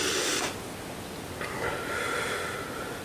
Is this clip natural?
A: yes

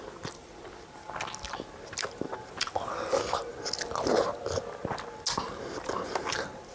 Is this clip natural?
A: yes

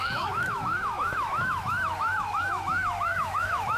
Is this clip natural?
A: no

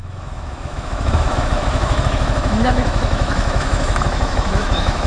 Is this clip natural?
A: no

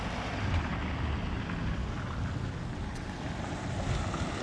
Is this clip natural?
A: yes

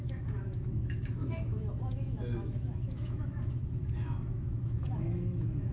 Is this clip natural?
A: no